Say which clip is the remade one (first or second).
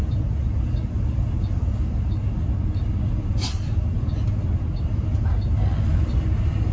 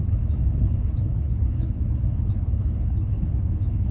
second